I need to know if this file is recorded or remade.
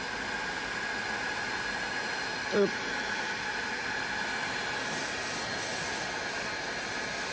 recorded